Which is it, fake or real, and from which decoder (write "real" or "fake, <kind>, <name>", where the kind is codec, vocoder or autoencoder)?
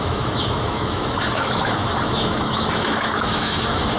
fake, autoencoder, DAC-VAE